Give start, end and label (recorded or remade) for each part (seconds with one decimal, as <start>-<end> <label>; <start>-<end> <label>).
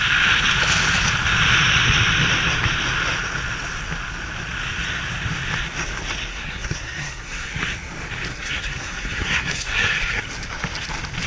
0.0-6.3 recorded; 6.3-7.5 remade; 7.5-8.3 recorded; 8.3-10.2 remade; 10.2-11.3 recorded